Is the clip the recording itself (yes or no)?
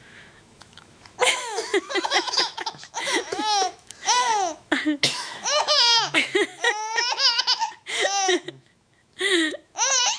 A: no